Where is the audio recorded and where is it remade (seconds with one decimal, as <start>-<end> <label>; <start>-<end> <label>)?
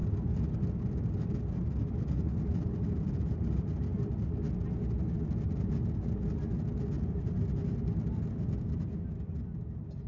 0.0-10.1 recorded